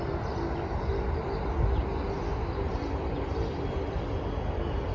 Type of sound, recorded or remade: recorded